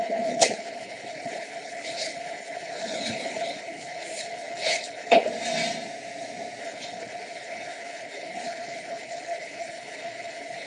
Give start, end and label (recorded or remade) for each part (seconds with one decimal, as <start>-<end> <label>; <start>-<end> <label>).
0.0-5.3 remade; 5.3-6.6 recorded; 6.6-10.7 remade